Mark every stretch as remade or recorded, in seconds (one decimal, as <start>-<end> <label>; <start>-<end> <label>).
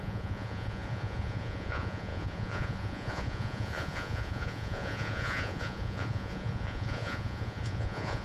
0.0-8.2 remade